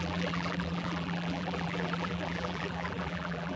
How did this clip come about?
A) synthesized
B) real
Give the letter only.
A